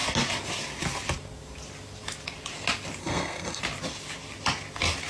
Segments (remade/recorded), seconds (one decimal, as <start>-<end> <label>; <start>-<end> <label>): 0.0-3.0 recorded; 3.0-3.6 remade; 3.6-5.1 recorded